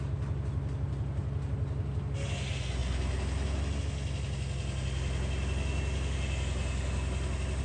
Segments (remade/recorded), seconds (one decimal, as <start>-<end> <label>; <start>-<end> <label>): 0.0-7.6 recorded